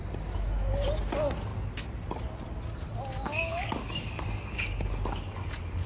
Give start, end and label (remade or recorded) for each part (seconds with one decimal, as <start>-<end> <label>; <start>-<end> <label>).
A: 0.0-3.3 recorded; 3.3-4.2 remade; 4.2-5.9 recorded